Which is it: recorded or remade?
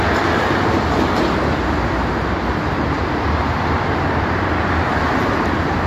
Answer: remade